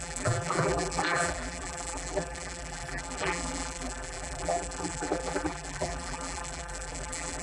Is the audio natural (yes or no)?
no